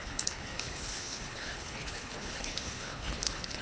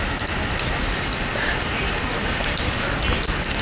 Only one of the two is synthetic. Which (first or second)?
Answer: first